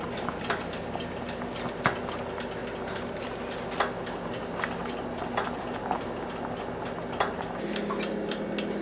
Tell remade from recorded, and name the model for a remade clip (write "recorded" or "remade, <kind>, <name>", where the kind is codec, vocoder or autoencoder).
recorded